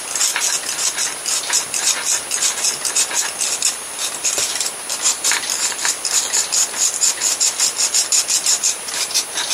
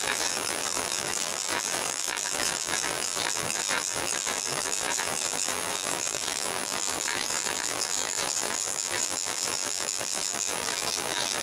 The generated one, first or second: second